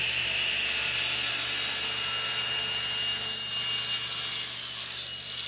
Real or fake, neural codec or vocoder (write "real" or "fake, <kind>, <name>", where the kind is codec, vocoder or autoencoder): real